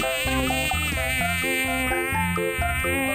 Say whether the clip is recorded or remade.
recorded